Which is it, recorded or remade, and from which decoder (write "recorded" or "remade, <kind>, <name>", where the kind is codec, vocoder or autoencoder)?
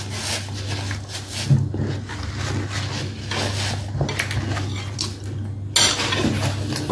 recorded